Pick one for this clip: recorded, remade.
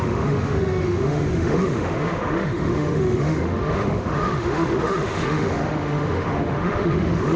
remade